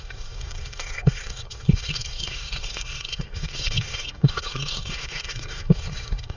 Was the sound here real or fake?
fake